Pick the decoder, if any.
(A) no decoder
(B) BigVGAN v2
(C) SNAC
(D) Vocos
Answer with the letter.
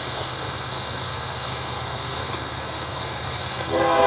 C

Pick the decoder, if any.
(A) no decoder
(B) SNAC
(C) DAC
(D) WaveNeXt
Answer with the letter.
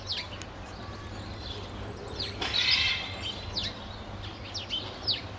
A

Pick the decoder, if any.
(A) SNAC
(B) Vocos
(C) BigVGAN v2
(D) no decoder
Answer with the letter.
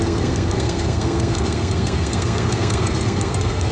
A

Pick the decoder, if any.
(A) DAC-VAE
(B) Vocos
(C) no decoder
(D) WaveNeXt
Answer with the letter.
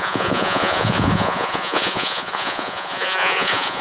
B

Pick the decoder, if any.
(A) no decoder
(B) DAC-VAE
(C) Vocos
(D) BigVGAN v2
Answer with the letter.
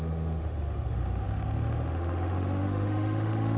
B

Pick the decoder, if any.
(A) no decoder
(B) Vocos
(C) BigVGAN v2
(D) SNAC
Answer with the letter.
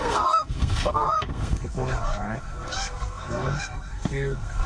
D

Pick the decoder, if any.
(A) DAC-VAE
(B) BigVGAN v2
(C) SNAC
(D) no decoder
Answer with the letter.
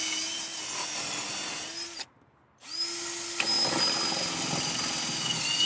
D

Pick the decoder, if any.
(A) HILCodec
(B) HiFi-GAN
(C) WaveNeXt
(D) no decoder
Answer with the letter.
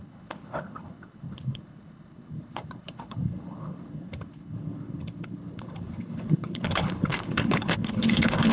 A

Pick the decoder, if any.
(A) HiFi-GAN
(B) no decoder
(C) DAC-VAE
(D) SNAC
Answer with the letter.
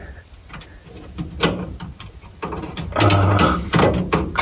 B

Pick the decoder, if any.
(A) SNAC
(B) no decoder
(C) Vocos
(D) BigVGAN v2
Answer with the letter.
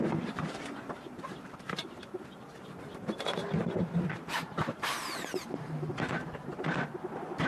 D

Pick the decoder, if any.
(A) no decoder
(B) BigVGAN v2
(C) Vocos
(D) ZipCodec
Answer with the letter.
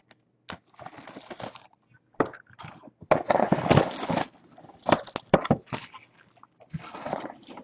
A